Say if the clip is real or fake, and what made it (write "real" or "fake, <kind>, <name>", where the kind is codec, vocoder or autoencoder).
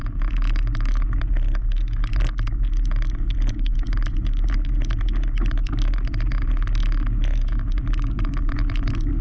real